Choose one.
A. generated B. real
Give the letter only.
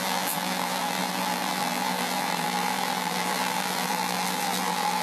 A